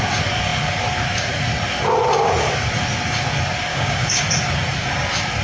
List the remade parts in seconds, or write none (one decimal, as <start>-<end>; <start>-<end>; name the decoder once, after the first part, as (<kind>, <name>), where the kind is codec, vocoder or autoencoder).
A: 3.7-4.2 (codec, DAC)